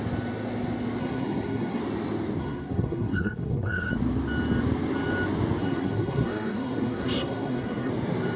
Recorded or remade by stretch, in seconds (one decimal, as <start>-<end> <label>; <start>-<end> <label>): 0.0-1.0 recorded; 1.0-1.8 remade; 1.8-2.4 recorded; 2.4-3.9 remade; 3.9-5.6 recorded; 5.6-7.9 remade; 7.9-8.4 recorded